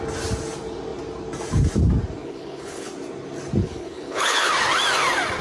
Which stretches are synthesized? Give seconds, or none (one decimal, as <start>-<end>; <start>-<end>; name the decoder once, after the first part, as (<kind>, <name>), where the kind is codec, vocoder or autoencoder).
2.2-2.9 (codec, HILCodec); 3.6-4.5